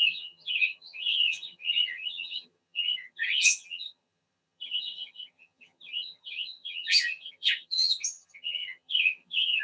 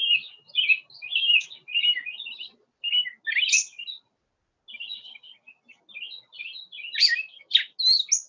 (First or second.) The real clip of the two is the second